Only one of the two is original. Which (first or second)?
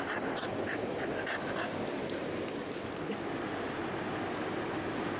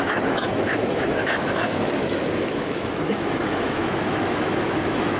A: first